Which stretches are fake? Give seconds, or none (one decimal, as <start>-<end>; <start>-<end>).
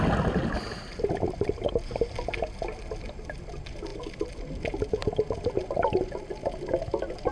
none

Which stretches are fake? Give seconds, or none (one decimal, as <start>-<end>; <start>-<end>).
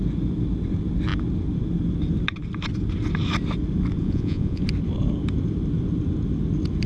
4.0-4.6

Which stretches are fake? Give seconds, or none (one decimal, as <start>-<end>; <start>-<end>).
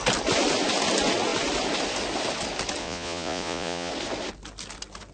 2.8-3.9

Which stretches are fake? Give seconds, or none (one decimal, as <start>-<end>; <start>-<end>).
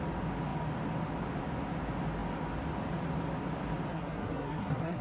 3.9-5.0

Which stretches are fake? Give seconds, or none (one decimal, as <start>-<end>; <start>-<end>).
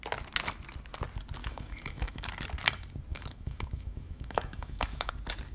1.4-2.3; 3.1-5.1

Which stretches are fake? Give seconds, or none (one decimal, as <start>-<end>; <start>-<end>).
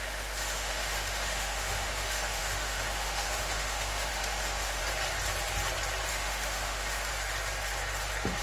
0.0-4.8; 6.1-7.1